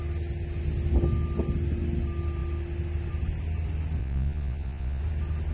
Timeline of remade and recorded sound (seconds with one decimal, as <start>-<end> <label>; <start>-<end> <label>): 0.0-4.0 recorded; 4.0-5.0 remade; 5.0-5.5 recorded